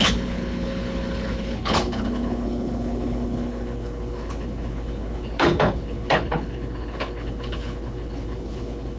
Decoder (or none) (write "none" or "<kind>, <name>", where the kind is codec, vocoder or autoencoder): codec, HILCodec